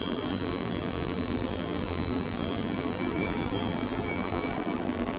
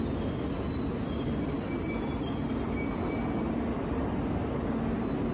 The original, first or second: second